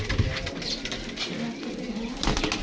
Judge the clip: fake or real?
real